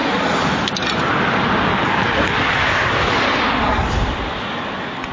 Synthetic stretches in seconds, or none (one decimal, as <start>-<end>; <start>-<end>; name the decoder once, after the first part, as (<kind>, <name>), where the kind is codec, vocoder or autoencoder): none